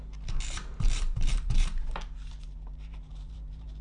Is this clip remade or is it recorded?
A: remade